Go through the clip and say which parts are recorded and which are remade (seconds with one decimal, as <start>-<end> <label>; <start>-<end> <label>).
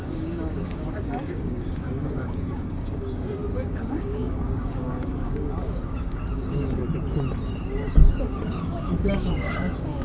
0.0-6.8 remade; 6.8-8.1 recorded; 8.1-10.0 remade